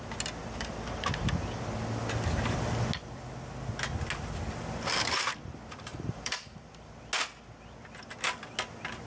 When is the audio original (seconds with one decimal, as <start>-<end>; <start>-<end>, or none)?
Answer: 0.0-0.4; 1.1-5.9; 6.9-9.1

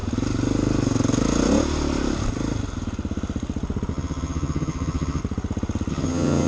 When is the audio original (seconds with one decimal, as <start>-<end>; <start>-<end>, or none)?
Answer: 0.0-3.9; 5.2-5.9

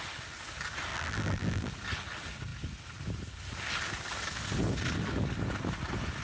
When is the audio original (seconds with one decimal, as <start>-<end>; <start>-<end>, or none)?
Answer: 0.0-0.9; 1.7-6.2

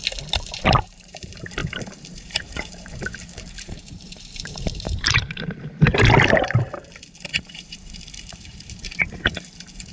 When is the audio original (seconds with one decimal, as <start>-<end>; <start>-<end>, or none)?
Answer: 0.0-0.8; 5.9-7.4

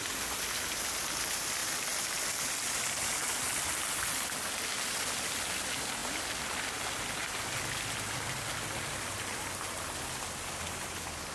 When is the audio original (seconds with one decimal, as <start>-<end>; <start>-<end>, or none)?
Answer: 0.0-11.3

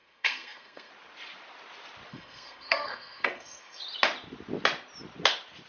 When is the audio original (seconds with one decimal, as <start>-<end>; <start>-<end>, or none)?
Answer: 0.9-2.1; 3.8-5.7

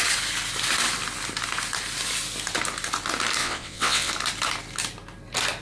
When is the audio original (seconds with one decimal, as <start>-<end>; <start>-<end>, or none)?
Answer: 0.0-3.4; 4.1-5.6